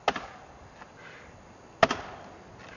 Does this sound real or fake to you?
real